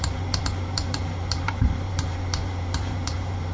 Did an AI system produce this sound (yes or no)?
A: yes